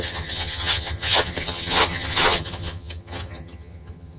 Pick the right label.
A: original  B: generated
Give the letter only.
B